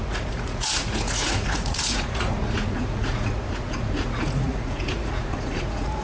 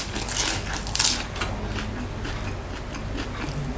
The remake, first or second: first